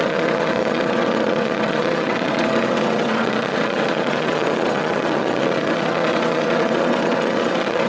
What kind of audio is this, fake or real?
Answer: fake